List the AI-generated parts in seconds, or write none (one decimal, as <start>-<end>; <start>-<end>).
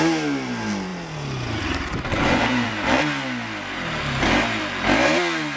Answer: 2.1-3.0